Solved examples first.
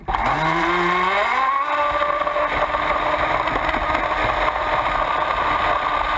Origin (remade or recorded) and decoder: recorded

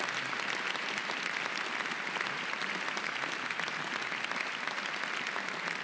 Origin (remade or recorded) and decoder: recorded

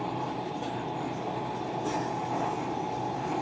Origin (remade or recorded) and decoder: recorded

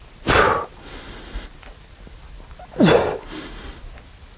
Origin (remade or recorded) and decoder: recorded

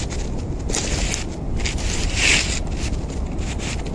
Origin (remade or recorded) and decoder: recorded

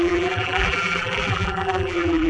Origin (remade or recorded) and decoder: remade, vocoder, BigVGAN v2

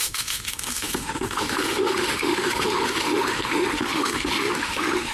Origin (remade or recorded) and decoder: remade, autoencoder, DAC-VAE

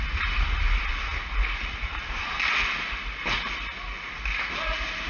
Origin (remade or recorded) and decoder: recorded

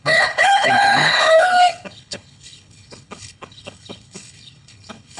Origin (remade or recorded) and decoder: remade, codec, HILCodec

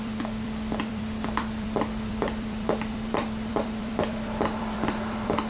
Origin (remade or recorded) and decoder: remade, vocoder, BigVGAN v2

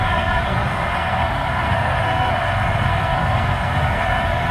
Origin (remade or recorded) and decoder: remade, codec, SNAC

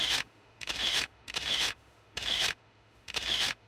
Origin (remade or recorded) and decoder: remade, autoencoder, DAC-VAE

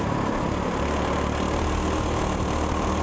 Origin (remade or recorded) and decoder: recorded